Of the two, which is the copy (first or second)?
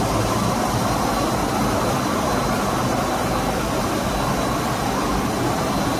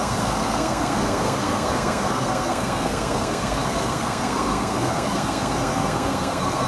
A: second